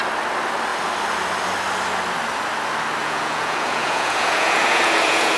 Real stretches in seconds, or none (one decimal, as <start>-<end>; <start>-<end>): 0.0-3.0